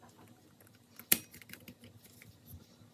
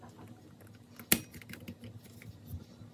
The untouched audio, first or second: second